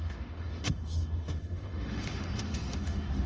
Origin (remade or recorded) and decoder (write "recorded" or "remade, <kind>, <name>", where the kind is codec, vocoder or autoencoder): remade, autoencoder, DAC-VAE